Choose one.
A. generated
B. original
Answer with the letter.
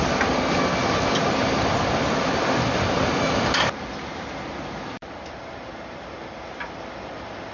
B